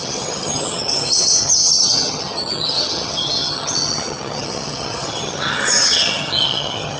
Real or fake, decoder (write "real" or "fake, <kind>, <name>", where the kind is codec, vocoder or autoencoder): fake, vocoder, HiFi-GAN